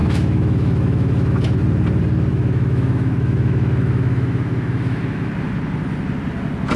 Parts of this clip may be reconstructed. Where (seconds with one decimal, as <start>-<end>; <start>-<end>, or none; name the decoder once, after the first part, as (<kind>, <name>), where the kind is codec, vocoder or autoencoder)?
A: 0.0-1.6 (autoencoder, DAC-VAE); 2.3-5.3

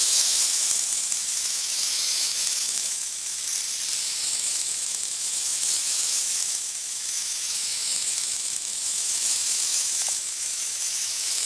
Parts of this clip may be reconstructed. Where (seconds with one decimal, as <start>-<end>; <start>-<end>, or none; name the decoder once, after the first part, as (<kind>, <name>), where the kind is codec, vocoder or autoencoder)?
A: 0.0-3.4 (autoencoder, DAC-VAE); 4.0-11.5

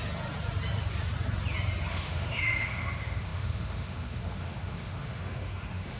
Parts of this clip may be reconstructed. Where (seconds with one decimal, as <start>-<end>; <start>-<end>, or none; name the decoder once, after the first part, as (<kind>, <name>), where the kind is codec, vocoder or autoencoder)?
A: 1.9-6.0 (autoencoder, DAC-VAE)

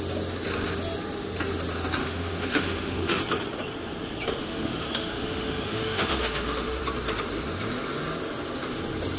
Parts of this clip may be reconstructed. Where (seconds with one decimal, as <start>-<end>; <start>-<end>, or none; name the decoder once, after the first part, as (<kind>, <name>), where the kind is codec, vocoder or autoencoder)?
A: 2.0-3.2 (autoencoder, DAC-VAE); 4.4-6.8

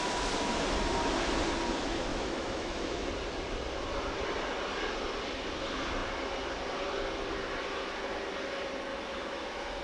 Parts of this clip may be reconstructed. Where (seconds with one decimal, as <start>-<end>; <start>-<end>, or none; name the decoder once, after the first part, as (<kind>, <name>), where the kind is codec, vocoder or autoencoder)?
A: 2.1-3.1 (autoencoder, DAC-VAE); 8.9-9.8

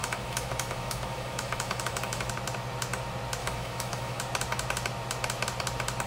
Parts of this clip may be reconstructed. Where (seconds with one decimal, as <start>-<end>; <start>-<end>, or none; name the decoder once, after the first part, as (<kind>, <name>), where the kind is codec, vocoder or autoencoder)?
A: 0.0-2.3 (autoencoder, DAC-VAE); 3.4-4.2